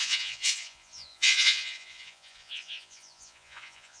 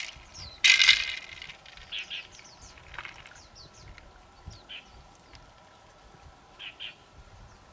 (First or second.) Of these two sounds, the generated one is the first